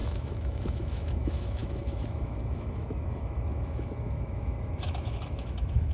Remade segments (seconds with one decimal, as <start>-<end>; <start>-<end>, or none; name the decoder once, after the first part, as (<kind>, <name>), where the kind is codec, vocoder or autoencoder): 0.0-5.9 (autoencoder, DAC-VAE)